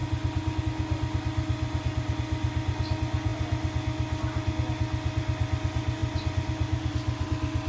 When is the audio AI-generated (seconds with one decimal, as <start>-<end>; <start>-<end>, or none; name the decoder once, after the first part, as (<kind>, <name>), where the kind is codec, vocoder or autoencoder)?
none